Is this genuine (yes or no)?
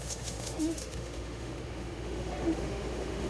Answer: no